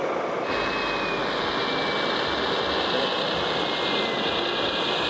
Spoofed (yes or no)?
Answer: no